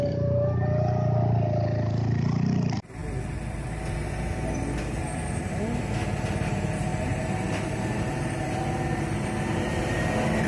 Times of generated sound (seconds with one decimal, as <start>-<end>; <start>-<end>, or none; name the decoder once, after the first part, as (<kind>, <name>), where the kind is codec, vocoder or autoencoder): 6.9-8.3 (vocoder, BigVGAN v2)

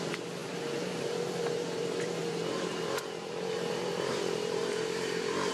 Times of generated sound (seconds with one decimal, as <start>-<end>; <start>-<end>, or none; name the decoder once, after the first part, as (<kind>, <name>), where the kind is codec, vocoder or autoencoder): 0.0-5.5 (vocoder, BigVGAN v2)

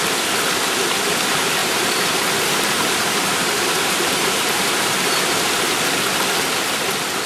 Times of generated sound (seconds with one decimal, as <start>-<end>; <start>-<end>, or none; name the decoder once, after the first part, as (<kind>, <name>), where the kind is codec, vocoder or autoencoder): 1.6-5.2 (vocoder, BigVGAN v2)

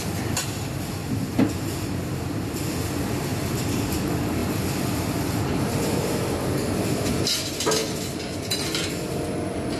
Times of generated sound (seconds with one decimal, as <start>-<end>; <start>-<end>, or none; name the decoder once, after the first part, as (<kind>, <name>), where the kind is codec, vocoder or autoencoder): 3.3-4.0 (vocoder, BigVGAN v2); 4.4-7.1

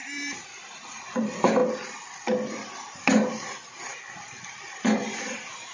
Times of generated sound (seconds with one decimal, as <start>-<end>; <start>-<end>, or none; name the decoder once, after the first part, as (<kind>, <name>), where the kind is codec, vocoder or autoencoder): 0.0-1.6 (vocoder, BigVGAN v2); 2.5-3.9; 5.2-5.7

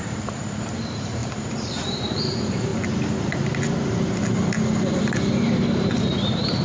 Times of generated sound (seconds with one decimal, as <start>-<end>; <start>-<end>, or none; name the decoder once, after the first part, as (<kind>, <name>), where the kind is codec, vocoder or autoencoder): 0.0-2.7 (vocoder, BigVGAN v2); 5.0-6.6

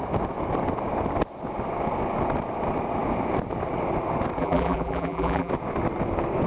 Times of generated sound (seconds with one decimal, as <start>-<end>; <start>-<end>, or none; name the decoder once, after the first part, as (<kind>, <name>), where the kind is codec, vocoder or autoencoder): 4.4-5.5 (vocoder, BigVGAN v2)